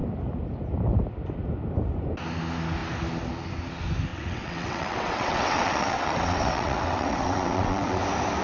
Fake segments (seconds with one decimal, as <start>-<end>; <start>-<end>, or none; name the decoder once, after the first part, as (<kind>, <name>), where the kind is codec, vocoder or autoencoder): 4.1-8.0 (vocoder, WaveNeXt)